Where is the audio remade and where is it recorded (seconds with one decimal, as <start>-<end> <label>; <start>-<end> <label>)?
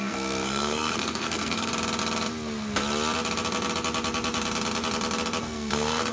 0.0-1.7 remade; 1.7-5.4 recorded; 5.4-6.1 remade